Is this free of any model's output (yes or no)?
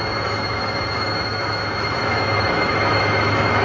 no